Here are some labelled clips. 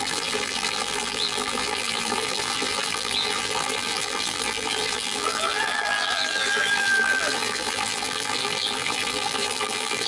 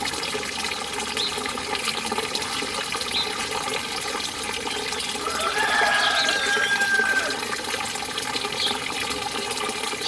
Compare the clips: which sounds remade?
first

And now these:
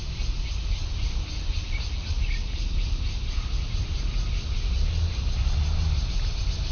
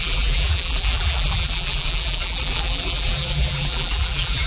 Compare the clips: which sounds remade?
second